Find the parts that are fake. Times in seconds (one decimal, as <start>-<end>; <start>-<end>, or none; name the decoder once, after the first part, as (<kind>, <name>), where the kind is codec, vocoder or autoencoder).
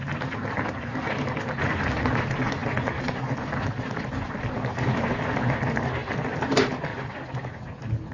6.0-6.5 (vocoder, BigVGAN v2)